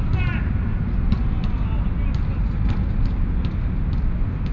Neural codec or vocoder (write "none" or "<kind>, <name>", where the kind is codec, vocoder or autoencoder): none